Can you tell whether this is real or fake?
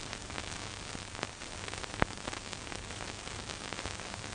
fake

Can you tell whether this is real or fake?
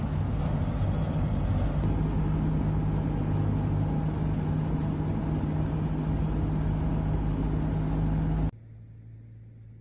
real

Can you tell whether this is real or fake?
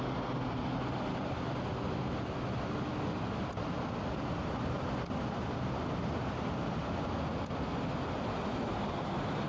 real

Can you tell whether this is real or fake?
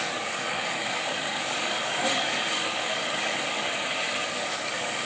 fake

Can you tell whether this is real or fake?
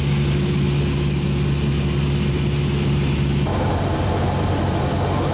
real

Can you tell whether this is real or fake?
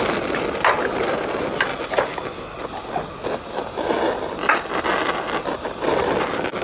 real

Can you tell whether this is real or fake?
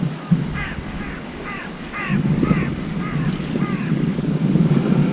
fake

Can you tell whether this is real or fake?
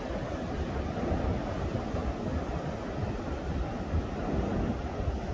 real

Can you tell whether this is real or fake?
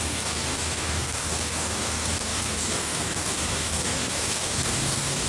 fake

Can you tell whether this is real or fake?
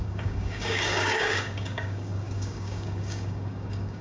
fake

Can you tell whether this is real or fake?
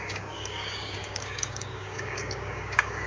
fake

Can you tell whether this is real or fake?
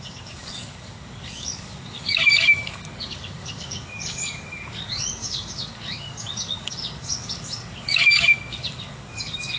fake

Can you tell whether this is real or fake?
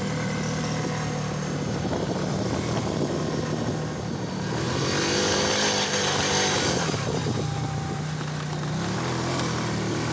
real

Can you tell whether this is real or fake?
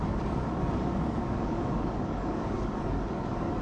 fake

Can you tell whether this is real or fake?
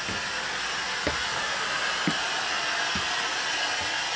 real